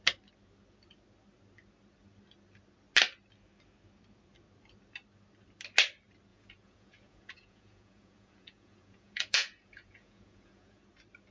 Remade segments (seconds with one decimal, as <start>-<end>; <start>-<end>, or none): 6.3-10.8